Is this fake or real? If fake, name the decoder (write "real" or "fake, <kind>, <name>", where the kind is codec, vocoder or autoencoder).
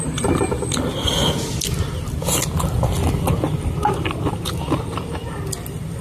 real